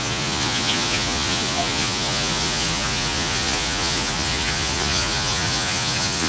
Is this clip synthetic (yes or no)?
yes